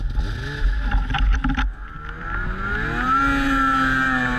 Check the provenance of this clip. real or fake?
real